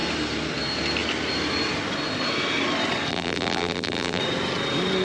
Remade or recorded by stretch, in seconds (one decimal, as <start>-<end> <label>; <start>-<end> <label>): 0.0-3.1 recorded; 3.1-4.2 remade; 4.2-5.0 recorded